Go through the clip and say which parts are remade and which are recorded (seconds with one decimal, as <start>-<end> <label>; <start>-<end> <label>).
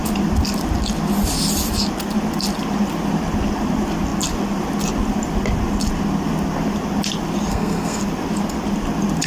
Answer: 0.0-7.5 recorded; 7.5-8.0 remade; 8.0-9.3 recorded